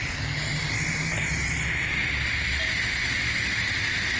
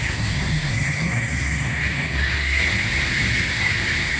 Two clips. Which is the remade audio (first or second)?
second